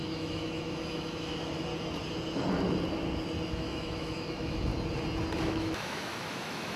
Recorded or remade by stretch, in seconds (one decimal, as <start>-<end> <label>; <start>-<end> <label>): 0.0-1.7 remade; 1.7-3.5 recorded; 3.5-4.7 remade; 4.7-5.4 recorded; 5.4-6.8 remade